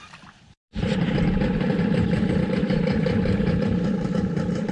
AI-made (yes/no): yes